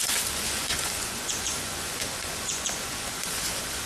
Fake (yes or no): yes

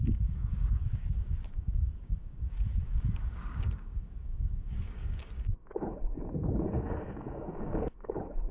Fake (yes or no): yes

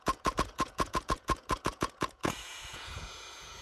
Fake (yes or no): yes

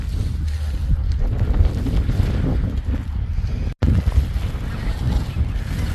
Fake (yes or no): no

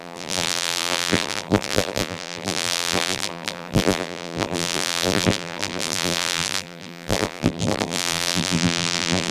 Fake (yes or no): yes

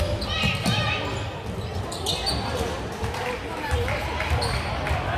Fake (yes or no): no